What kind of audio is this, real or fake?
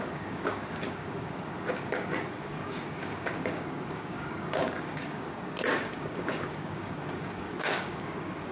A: fake